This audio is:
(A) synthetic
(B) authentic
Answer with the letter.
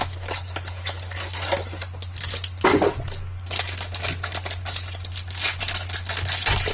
B